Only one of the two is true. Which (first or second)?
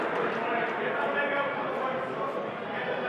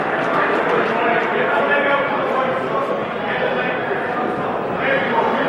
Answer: first